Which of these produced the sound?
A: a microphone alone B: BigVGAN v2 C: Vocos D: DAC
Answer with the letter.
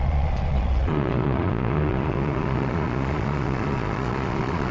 C